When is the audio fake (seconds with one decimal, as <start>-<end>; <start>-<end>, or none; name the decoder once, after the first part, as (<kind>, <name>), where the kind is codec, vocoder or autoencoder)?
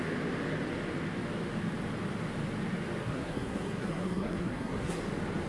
3.0-5.0 (codec, SNAC)